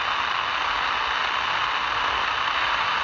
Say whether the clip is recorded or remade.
recorded